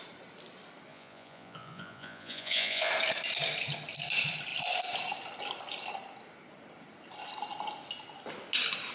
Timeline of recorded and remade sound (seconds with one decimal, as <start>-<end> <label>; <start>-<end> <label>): 0.0-0.9 recorded; 0.9-2.9 remade; 2.9-8.9 recorded